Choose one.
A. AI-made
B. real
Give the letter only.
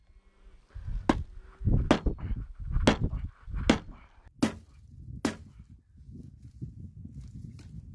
B